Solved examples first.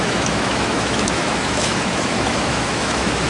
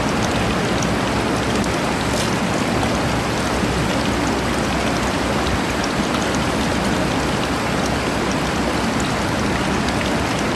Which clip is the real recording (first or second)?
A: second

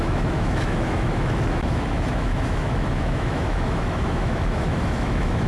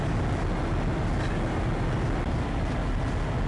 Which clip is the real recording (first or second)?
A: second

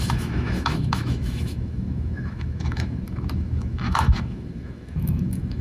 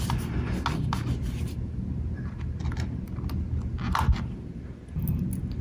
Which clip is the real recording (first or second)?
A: second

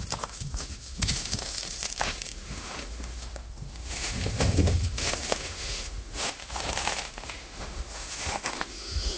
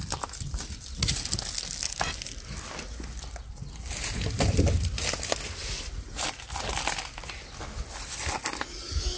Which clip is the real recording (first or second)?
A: second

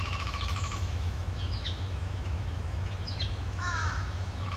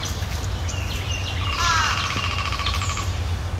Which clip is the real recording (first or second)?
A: second